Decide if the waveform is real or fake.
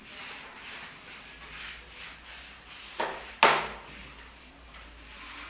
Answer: real